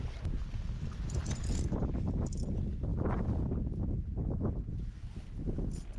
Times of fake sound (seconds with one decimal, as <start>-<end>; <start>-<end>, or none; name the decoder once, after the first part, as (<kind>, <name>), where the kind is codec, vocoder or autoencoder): none